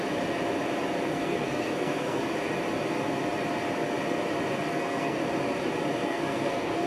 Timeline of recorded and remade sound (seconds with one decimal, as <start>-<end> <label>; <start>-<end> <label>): 0.0-1.1 recorded; 1.1-2.2 remade; 2.2-4.7 recorded; 4.7-5.2 remade; 5.2-6.0 recorded; 6.0-6.9 remade